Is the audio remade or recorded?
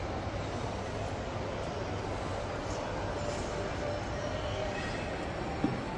recorded